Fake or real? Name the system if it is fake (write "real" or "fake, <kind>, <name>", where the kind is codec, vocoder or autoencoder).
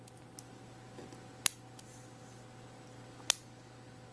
real